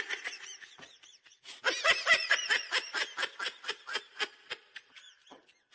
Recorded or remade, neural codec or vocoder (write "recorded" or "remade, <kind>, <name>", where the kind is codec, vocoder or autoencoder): recorded